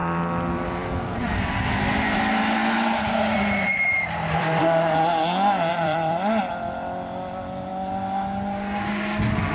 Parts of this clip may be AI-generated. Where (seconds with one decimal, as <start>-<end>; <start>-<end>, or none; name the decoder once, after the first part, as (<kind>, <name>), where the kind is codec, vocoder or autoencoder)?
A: 0.0-4.9 (vocoder, BigVGAN v2); 5.7-6.4